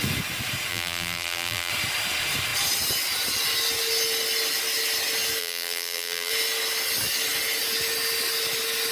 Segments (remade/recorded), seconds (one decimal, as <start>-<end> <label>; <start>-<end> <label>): 0.0-0.7 recorded; 0.7-1.7 remade; 1.7-5.4 recorded; 5.4-6.3 remade; 6.3-8.9 recorded